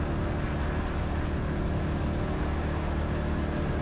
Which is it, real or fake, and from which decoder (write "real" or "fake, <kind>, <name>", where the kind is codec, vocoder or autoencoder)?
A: real